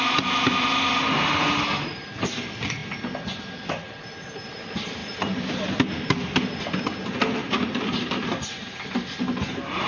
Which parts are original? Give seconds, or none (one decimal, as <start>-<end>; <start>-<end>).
0.0-7.4; 8.1-9.9